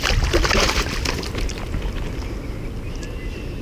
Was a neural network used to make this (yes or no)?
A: no